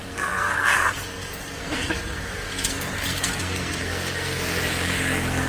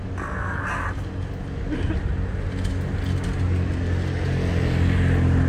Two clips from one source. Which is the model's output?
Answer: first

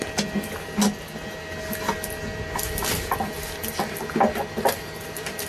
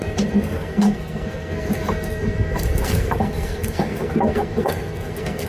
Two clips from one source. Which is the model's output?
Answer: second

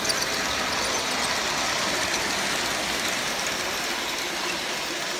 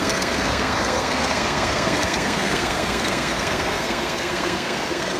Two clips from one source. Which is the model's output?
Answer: second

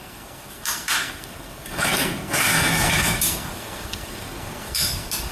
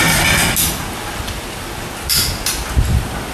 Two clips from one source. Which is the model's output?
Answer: first